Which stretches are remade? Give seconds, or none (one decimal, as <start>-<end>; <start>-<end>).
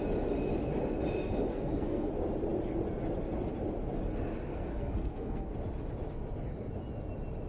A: 1.5-2.1; 4.5-5.5